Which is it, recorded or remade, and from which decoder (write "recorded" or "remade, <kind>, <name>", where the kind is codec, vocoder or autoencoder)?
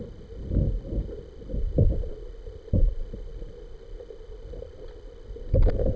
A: recorded